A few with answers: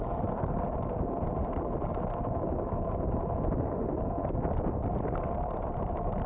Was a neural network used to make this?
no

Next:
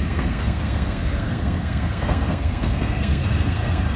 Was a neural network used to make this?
yes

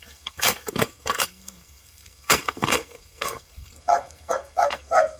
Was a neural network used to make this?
yes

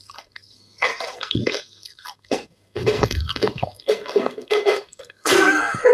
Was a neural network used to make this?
yes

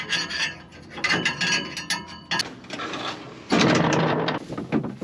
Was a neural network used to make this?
no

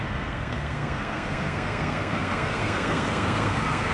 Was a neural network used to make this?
yes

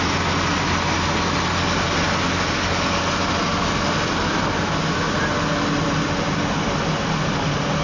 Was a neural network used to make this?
no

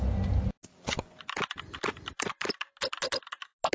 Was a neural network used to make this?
no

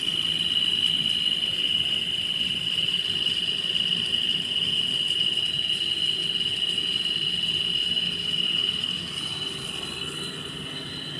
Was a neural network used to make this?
no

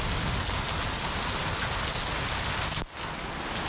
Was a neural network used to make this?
no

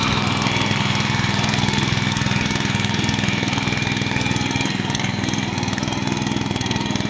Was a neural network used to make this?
yes